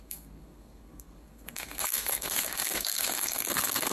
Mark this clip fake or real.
fake